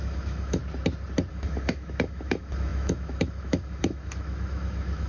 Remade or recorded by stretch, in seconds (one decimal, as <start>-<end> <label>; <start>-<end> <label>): 0.0-0.6 remade; 0.6-1.3 recorded; 1.3-5.1 remade